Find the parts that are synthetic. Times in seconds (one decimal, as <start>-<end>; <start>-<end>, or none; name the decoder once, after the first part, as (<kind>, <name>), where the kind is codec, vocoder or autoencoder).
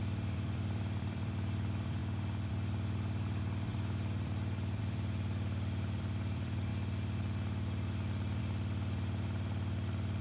0.0-2.0 (vocoder, BigVGAN v2); 2.5-6.7; 8.4-10.2